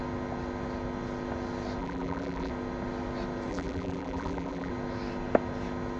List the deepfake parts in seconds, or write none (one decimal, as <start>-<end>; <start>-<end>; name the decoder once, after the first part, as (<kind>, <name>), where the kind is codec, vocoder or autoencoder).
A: 1.8-2.5 (vocoder, BigVGAN v2); 3.5-4.7